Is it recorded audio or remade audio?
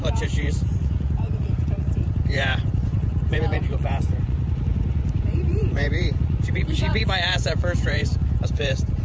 remade